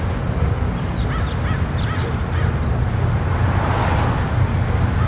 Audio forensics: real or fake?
real